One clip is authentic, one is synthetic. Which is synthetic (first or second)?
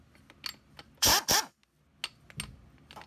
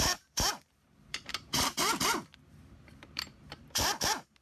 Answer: second